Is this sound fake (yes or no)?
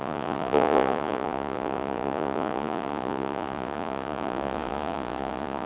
yes